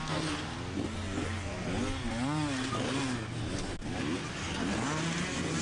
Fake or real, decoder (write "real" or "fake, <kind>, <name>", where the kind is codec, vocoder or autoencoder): real